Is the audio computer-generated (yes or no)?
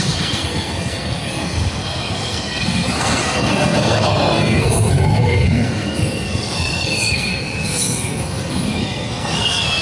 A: yes